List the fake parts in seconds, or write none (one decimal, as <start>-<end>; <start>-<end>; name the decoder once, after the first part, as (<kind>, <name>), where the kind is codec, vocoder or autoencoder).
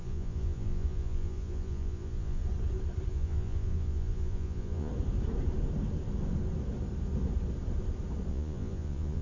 0.0-2.4 (vocoder, Vocos); 3.1-4.9; 8.3-9.2